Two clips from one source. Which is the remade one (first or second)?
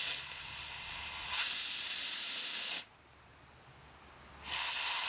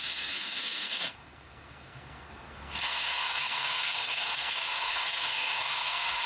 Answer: second